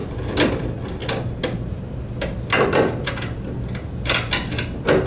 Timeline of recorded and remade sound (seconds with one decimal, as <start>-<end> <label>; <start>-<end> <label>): 0.0-5.1 recorded